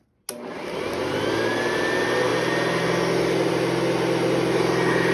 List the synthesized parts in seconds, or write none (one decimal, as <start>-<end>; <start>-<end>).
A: none

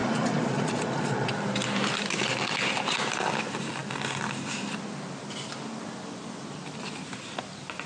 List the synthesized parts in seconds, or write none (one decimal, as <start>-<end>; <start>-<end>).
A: 0.0-1.3